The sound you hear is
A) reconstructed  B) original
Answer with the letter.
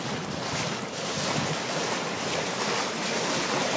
B